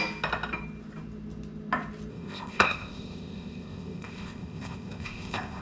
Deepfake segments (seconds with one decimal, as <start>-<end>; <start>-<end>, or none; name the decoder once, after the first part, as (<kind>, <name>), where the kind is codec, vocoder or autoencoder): 2.1-5.6 (codec, ZipCodec)